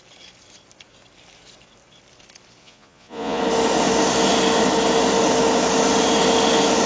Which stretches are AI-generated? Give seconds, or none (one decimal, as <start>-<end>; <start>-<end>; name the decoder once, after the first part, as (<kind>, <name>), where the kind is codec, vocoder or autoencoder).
2.6-3.4 (vocoder, Vocos)